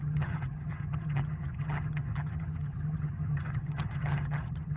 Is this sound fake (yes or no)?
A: yes